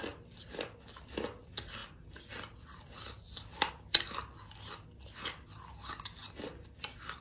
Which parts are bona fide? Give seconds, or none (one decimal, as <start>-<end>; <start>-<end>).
0.0-7.2